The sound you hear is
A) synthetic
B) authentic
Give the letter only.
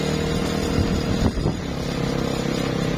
B